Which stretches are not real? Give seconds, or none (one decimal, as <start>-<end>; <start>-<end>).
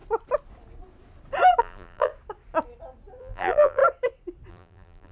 1.6-2.1; 3.2-3.8; 4.5-5.1